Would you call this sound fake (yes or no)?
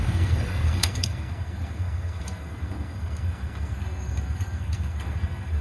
yes